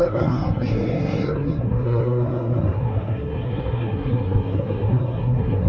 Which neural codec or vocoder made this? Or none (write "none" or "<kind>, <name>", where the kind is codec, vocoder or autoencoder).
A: codec, SNAC